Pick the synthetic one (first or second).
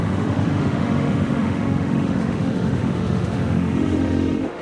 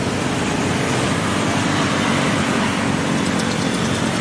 first